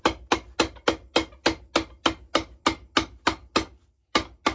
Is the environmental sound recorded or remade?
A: recorded